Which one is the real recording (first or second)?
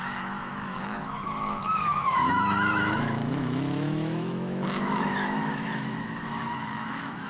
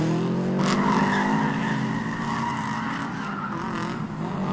second